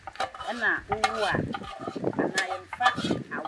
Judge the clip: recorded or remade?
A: recorded